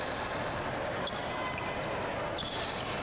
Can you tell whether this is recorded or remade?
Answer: recorded